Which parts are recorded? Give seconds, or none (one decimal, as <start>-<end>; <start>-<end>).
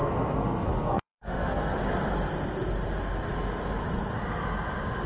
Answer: 1.7-5.1